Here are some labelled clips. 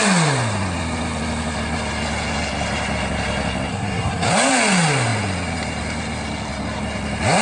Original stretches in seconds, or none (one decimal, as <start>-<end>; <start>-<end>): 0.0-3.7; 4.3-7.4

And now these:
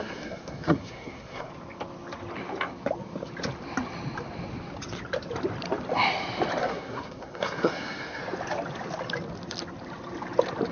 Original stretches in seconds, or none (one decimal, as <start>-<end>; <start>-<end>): 1.5-6.6; 8.2-10.7

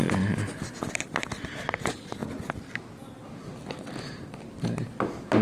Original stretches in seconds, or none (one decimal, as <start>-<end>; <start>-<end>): 0.0-5.4

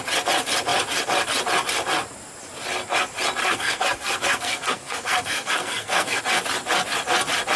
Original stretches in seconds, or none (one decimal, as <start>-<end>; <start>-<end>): 0.0-3.4; 6.2-7.6

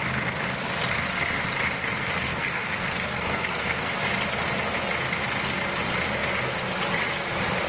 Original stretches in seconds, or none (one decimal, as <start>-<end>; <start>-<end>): 0.0-1.8; 3.9-7.7